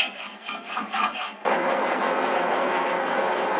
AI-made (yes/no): yes